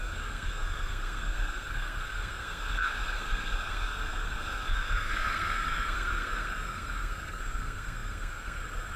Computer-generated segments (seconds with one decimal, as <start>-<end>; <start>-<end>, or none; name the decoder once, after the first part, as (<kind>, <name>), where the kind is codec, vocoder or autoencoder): 0.0-9.0 (codec, SNAC)